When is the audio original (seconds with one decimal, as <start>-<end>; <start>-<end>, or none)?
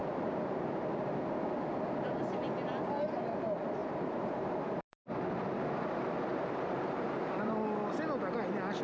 0.8-3.8; 5.1-6.3; 7.5-8.8